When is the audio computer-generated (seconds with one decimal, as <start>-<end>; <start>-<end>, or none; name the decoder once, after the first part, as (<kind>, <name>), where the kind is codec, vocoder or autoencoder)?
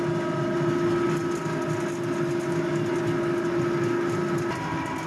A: none